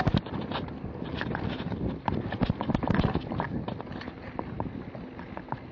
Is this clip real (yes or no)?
yes